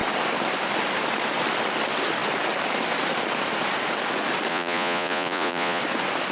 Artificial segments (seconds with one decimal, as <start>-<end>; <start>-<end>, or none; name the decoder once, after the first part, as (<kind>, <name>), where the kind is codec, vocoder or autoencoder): 4.5-5.8 (vocoder, Vocos)